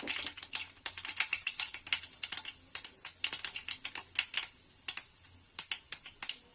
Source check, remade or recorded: recorded